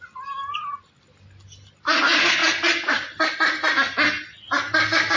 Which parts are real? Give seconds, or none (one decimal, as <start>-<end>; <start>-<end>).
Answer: 0.0-5.2